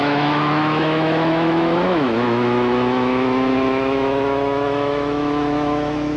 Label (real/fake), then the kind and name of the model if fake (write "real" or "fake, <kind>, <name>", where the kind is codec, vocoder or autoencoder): fake, autoencoder, DAC-VAE